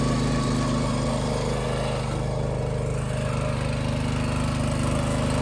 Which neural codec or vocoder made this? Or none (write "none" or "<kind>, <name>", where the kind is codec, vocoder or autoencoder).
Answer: none